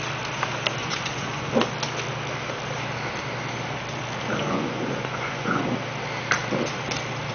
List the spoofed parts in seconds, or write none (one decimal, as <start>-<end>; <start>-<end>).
0.8-1.5; 4.4-5.6